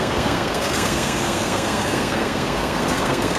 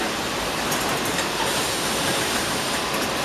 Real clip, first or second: second